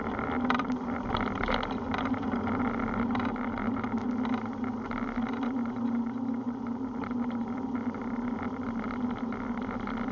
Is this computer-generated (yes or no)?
no